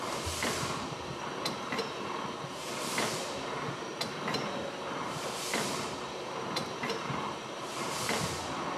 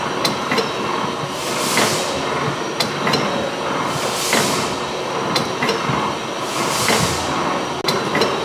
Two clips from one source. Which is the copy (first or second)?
first